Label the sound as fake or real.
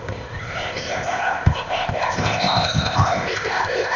fake